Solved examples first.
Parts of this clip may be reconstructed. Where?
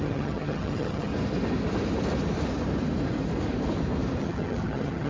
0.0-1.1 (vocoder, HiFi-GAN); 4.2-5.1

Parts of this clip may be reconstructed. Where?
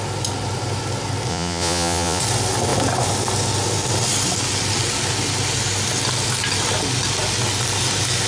1.3-2.2 (vocoder, Vocos)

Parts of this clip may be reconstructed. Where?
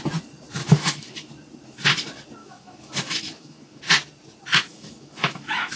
0.6-1.3 (autoencoder, DAC-VAE); 2.4-3.8; 4.7-5.8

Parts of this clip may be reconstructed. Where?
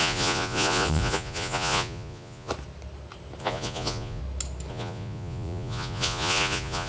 0.0-2.5 (vocoder, Vocos); 3.4-4.2; 4.7-6.9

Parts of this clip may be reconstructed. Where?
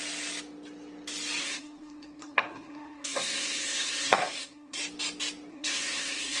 1.4-4.8 (codec, SNAC); 5.5-6.4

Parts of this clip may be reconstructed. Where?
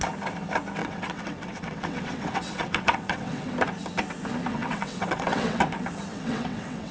0.8-3.5 (vocoder, WaveNeXt); 4.5-5.6; 6.1-6.9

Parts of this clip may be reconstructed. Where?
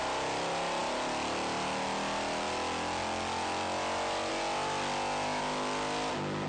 none